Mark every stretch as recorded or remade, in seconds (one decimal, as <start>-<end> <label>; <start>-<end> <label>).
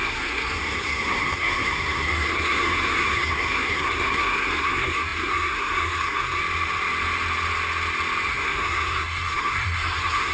0.0-6.4 remade; 6.4-8.3 recorded; 8.3-10.3 remade